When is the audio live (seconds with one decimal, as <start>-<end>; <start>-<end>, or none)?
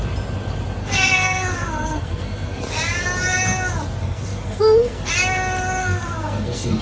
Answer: 0.0-0.8; 2.6-4.0; 5.1-5.8